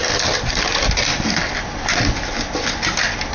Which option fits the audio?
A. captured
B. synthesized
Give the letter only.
A